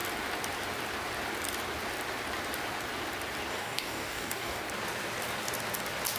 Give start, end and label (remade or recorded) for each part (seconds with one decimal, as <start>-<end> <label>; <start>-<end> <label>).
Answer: 0.0-3.5 recorded; 3.5-4.6 remade; 4.6-6.2 recorded